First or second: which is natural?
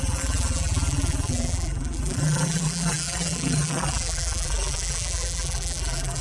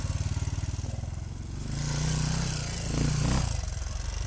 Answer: second